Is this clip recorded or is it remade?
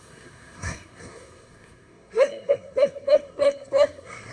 remade